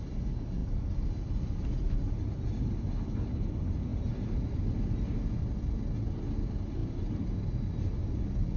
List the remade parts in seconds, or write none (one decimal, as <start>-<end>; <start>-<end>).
6.8-7.4